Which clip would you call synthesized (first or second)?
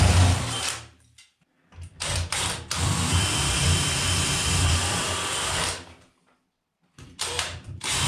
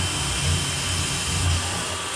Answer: first